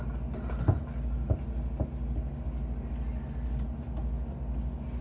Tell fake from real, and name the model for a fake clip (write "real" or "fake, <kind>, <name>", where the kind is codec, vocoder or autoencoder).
real